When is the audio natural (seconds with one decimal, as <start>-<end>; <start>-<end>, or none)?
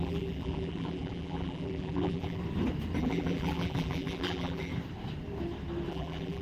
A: 2.4-3.0; 4.7-5.9